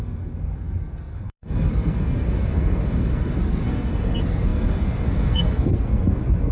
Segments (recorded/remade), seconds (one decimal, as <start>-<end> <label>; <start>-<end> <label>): 0.0-6.5 remade